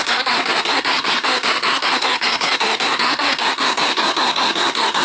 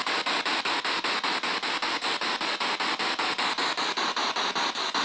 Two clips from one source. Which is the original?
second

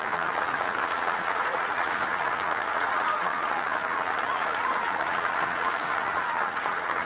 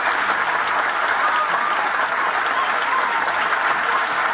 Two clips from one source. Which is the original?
second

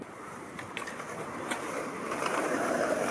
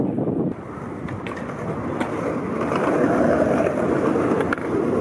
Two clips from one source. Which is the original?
second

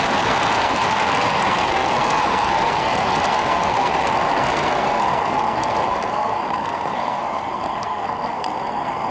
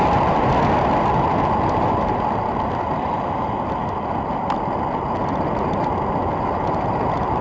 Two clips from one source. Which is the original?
second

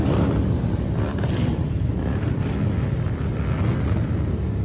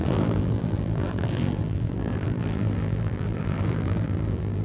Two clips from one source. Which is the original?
first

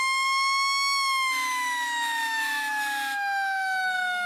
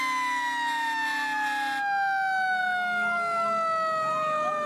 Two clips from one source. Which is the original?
second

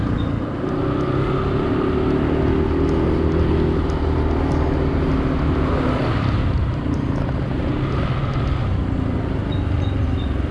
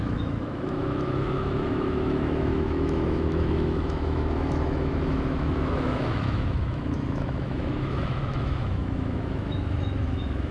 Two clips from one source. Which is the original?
first